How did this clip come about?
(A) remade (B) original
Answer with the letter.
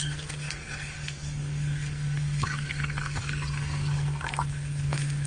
A